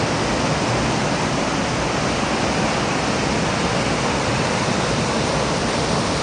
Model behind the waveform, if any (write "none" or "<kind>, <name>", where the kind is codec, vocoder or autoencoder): none